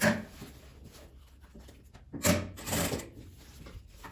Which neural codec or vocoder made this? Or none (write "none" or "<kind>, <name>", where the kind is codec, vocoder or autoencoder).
none